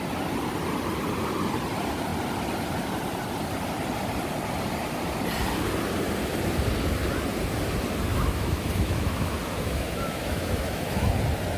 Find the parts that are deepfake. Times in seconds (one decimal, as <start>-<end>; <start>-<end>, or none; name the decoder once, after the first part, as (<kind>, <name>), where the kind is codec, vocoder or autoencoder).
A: 8.1-11.2 (autoencoder, DAC-VAE)